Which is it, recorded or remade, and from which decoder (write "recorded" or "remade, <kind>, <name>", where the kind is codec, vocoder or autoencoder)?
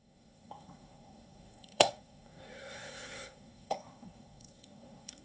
remade, codec, SNAC